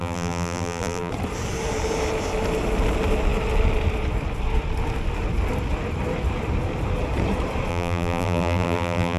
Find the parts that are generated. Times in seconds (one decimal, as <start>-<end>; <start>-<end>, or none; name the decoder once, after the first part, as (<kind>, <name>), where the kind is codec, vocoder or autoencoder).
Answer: 0.0-1.1 (vocoder, BigVGAN v2); 7.7-9.2